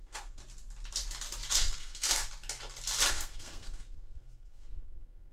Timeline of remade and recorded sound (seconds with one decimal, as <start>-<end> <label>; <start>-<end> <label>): 0.0-0.4 remade; 0.4-1.5 recorded; 1.5-2.2 remade; 2.2-3.1 recorded; 3.1-5.3 remade